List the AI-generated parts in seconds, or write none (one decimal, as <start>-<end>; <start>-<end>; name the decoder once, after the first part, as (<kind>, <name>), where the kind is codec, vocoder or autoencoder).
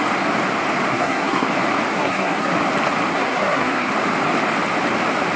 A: 0.9-1.5 (codec, SNAC); 1.9-2.5; 3.1-3.9